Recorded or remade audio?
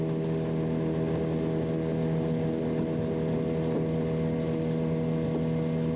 recorded